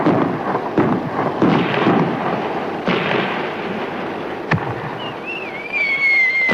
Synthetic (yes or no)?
no